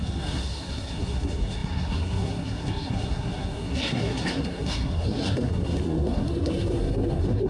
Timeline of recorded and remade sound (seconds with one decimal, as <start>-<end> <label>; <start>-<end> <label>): 0.0-7.5 remade